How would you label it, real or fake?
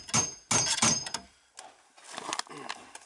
real